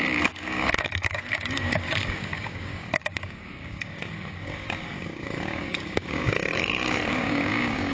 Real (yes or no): no